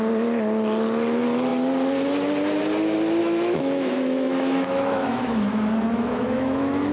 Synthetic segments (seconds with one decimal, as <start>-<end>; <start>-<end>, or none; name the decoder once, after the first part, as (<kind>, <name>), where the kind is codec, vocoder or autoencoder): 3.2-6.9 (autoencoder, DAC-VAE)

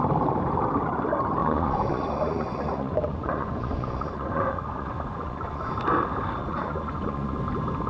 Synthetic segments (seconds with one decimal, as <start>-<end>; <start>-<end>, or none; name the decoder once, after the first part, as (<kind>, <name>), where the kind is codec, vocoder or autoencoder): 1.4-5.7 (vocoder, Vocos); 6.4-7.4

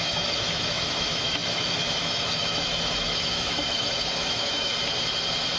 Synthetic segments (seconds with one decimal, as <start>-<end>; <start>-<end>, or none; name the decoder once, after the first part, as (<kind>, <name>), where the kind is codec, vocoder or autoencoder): 0.0-4.7 (autoencoder, DAC-VAE)

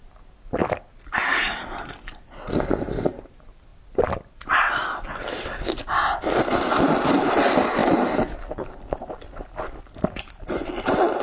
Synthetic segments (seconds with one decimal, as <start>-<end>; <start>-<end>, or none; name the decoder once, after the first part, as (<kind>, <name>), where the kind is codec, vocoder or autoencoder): none